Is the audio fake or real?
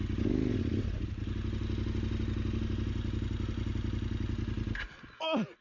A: real